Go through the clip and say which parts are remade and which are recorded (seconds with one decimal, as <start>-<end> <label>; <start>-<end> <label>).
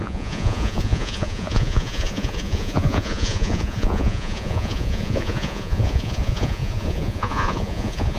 0.0-8.2 remade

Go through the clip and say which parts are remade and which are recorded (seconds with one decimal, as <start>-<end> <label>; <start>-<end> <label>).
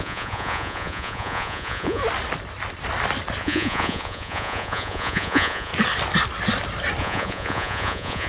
0.0-2.0 remade; 2.0-3.4 recorded; 3.4-5.7 remade; 5.7-7.0 recorded; 7.0-8.3 remade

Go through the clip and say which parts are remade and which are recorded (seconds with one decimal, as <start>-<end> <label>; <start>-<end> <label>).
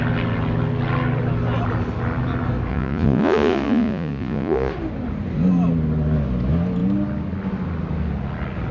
0.0-2.7 recorded; 2.7-4.7 remade; 4.7-8.7 recorded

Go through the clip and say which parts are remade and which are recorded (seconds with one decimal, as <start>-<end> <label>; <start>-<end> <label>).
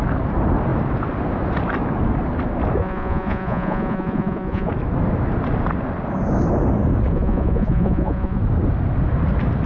0.0-2.8 recorded; 2.8-4.7 remade; 4.7-7.1 recorded; 7.1-8.4 remade; 8.4-9.7 recorded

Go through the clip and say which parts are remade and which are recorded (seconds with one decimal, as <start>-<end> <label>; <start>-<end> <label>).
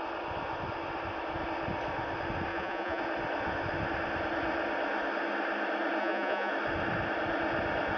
0.0-2.5 recorded; 2.5-3.0 remade; 3.0-6.0 recorded; 6.0-6.5 remade; 6.5-8.0 recorded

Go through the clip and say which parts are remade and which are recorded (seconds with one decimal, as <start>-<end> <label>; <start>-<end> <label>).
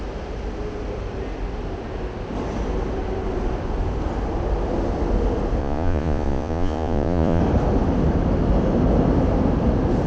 0.0-5.6 recorded; 5.6-7.4 remade; 7.4-10.1 recorded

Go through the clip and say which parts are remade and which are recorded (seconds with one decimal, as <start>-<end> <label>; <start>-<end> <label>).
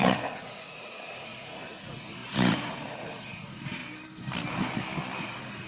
0.0-3.8 remade; 3.8-5.2 recorded; 5.2-5.7 remade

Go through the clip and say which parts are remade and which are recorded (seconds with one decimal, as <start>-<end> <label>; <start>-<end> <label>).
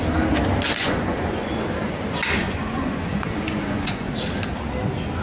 0.0-0.8 recorded; 0.8-1.5 remade; 1.5-2.4 recorded; 2.4-4.1 remade; 4.1-5.2 recorded